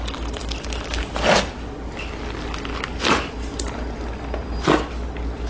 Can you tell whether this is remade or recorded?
recorded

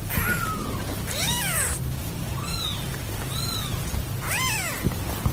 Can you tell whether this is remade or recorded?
recorded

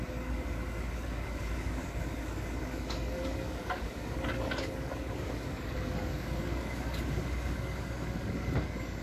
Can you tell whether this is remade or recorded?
remade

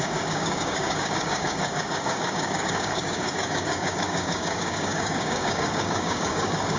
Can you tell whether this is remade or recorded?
remade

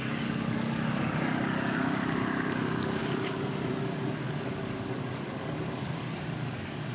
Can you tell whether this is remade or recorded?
remade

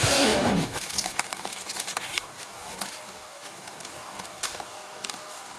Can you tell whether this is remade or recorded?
remade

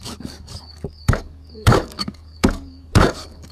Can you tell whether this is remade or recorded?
remade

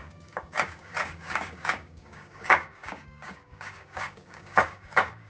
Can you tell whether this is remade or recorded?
remade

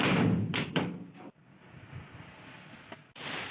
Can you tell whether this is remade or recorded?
recorded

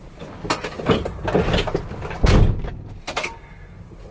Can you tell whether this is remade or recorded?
recorded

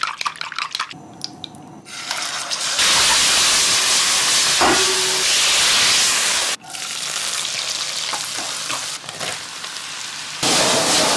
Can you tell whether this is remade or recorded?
recorded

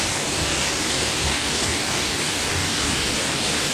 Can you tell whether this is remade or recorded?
remade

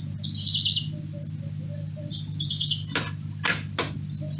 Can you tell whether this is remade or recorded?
recorded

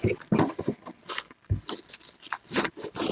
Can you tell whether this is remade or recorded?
recorded